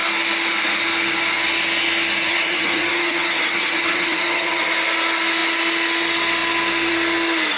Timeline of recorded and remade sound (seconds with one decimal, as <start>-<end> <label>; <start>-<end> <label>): 0.0-2.2 recorded; 2.2-4.7 remade; 4.7-7.6 recorded